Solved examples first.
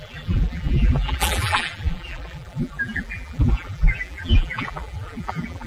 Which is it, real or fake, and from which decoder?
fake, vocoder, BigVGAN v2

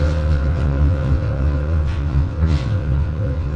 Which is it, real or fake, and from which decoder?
fake, vocoder, WaveNeXt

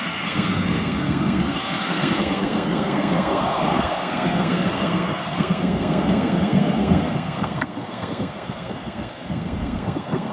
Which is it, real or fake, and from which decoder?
fake, codec, SNAC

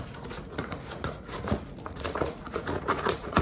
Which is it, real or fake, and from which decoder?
fake, vocoder, Vocos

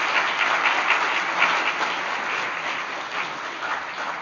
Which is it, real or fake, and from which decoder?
real